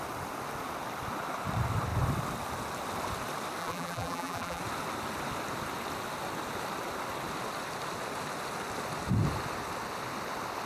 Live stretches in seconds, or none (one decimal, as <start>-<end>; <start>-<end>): 0.0-3.6; 4.6-10.7